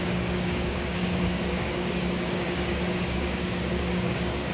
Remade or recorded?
remade